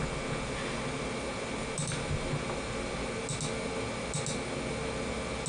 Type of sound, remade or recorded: recorded